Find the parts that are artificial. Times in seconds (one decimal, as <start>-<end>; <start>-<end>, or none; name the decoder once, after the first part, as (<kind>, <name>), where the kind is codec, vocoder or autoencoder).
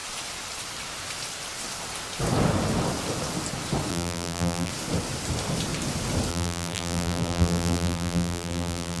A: 3.9-4.7 (vocoder, BigVGAN v2); 6.3-9.0